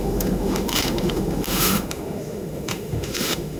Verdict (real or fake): fake